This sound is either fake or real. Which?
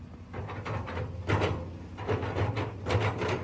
real